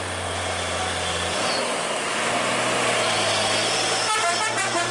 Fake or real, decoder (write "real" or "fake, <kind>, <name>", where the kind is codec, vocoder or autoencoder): real